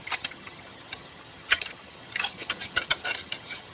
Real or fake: fake